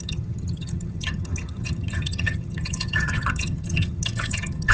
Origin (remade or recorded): remade